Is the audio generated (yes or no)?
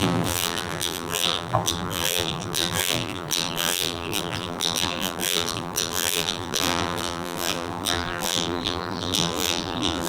yes